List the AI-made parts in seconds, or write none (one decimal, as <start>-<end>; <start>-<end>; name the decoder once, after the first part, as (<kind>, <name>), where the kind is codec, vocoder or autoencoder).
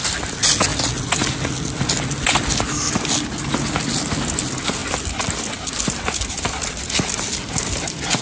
4.8-6.8 (vocoder, BigVGAN v2)